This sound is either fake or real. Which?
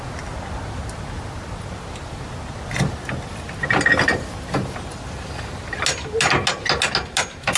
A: real